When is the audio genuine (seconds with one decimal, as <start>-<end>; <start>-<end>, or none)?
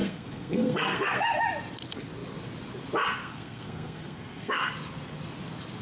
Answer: 1.4-3.2; 4.7-5.8